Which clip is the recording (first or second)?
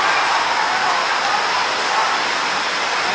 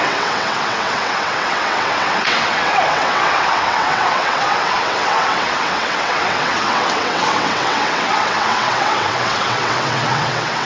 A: first